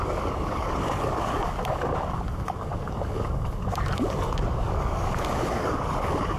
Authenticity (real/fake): fake